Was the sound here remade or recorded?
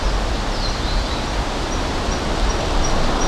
recorded